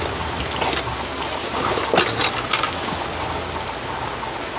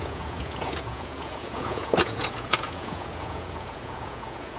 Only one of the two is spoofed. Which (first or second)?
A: second